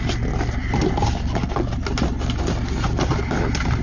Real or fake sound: real